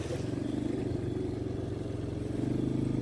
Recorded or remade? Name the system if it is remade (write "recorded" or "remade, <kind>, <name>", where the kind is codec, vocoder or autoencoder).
recorded